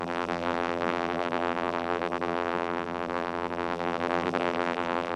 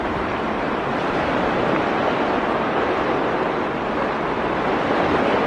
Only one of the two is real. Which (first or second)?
second